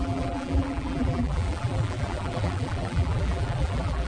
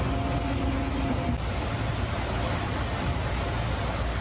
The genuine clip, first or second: second